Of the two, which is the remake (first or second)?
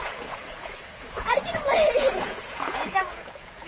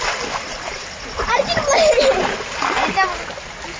first